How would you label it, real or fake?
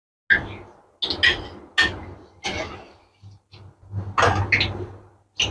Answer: real